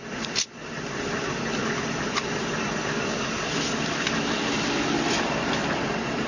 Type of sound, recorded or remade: recorded